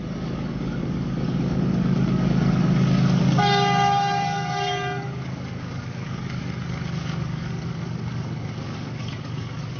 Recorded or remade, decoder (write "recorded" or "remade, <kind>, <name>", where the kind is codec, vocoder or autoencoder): remade, codec, DAC